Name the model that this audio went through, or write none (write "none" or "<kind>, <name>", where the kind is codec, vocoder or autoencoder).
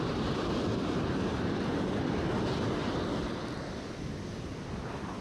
none